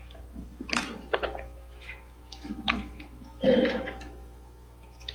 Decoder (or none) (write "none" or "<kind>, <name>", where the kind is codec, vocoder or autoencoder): autoencoder, DAC-VAE